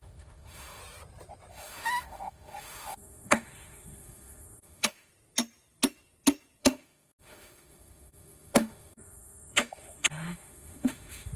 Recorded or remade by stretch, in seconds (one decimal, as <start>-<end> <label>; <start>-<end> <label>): 0.0-0.8 remade; 0.8-1.5 recorded; 1.5-5.1 remade; 5.1-6.6 recorded; 6.6-11.4 remade